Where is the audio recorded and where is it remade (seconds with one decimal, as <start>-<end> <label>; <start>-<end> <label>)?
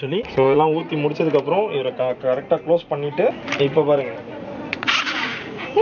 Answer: 0.0-0.8 remade; 0.8-4.3 recorded; 4.3-5.8 remade